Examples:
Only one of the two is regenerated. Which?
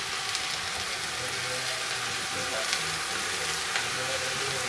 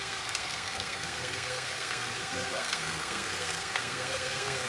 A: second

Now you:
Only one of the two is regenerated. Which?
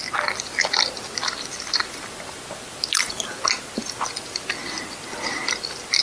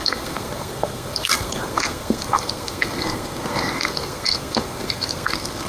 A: second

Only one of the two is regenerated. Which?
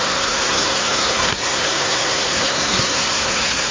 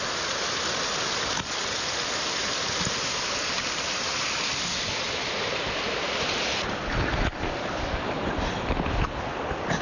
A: first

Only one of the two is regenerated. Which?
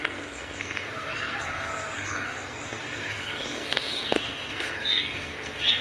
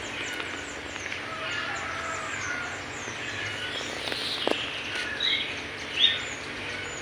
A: first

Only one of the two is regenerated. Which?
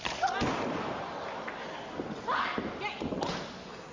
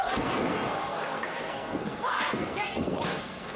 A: second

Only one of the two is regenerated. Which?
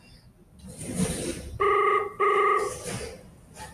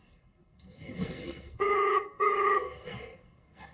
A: second